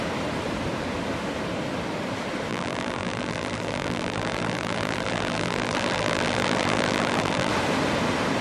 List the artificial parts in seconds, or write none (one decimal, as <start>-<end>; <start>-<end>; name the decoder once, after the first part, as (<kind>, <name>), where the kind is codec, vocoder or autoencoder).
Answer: 2.5-7.5 (vocoder, BigVGAN v2)